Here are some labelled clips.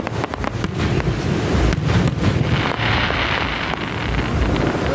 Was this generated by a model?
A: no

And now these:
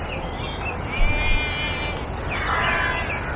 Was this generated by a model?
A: no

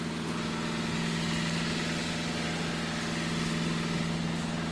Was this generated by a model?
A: no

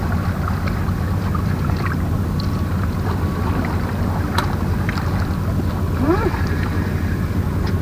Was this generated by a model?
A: no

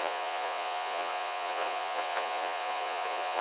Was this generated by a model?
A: yes